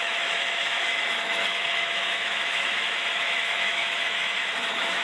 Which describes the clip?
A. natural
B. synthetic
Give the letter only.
B